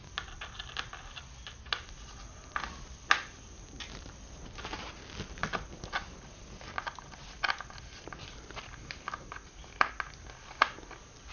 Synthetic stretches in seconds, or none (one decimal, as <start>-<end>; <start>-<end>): none